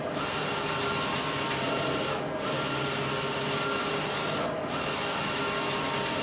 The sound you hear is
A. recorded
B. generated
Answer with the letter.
A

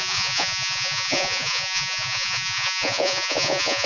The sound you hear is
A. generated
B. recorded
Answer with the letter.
A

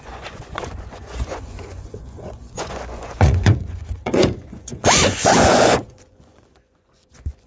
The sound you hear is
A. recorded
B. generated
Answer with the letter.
B